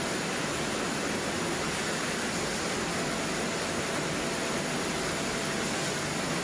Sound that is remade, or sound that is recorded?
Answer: recorded